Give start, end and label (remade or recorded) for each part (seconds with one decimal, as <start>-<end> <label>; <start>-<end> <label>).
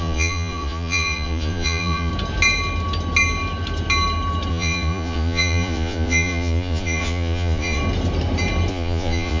0.0-2.1 remade; 2.1-4.5 recorded; 4.5-7.8 remade; 7.8-8.7 recorded; 8.7-9.4 remade